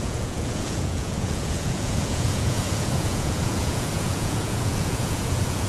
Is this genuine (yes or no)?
no